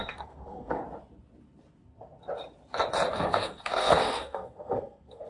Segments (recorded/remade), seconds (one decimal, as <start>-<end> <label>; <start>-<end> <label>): 0.0-0.8 remade; 0.8-3.1 recorded; 3.1-5.3 remade